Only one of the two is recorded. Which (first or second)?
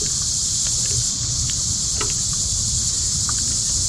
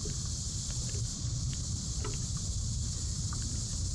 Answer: first